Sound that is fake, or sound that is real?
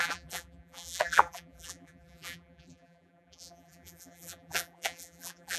fake